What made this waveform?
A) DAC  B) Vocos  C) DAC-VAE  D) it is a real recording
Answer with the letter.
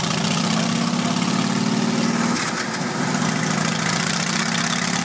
D